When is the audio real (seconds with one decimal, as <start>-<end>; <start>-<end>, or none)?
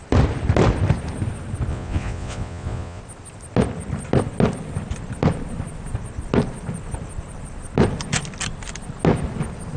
0.0-1.7; 3.0-9.8